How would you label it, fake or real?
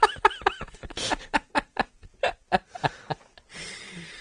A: fake